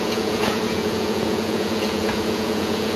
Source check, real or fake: fake